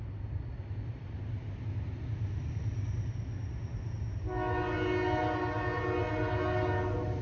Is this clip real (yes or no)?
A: yes